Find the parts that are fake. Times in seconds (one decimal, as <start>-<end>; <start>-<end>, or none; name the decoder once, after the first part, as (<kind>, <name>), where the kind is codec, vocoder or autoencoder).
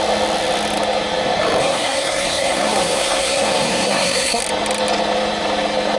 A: 1.6-4.4 (codec, SNAC)